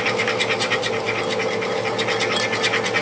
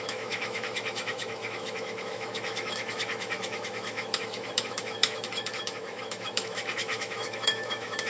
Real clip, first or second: first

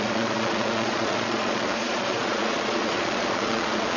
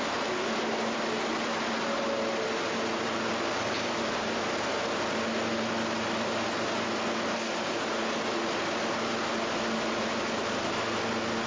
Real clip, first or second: second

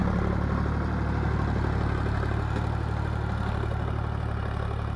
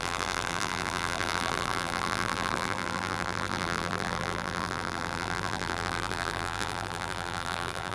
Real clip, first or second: first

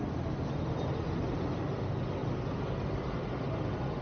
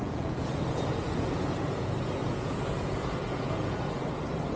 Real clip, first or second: first